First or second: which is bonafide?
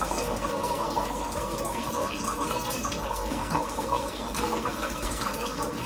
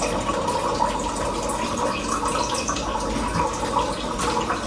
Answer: second